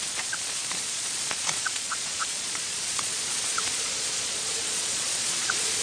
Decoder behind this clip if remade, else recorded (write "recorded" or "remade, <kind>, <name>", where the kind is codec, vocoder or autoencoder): remade, vocoder, Vocos